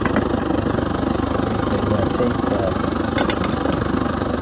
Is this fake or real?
fake